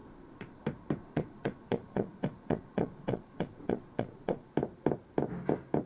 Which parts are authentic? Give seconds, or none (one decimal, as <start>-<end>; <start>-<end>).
0.6-1.0; 4.5-5.9

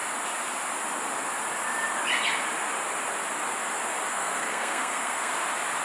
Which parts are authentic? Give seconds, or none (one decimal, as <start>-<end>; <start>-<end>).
0.0-4.1; 5.3-5.8

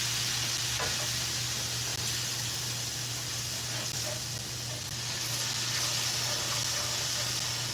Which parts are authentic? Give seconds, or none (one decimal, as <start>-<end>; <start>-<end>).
0.0-7.7

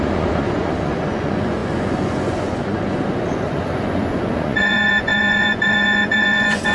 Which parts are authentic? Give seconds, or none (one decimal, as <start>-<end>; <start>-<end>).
none

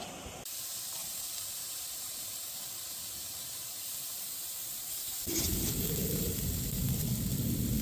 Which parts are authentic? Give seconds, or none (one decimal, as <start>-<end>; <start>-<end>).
0.0-1.0; 5.7-7.8

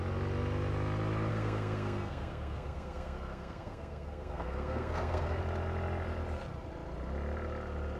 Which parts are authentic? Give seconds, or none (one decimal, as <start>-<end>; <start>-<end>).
0.0-1.3; 5.4-8.0

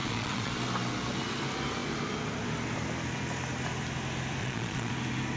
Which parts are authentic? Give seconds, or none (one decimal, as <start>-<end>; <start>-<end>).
0.5-4.4; 4.9-5.4